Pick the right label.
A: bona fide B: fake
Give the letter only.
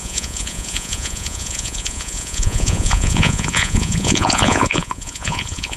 B